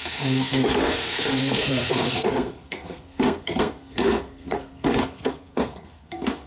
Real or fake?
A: fake